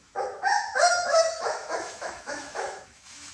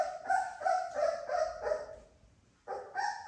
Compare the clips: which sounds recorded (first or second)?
second